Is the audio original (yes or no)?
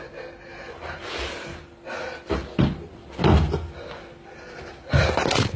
yes